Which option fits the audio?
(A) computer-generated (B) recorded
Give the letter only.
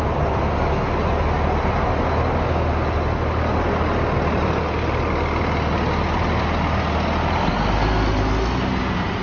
B